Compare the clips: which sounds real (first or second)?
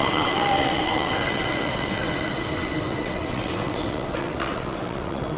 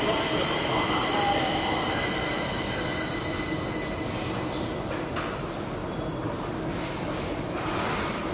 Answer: second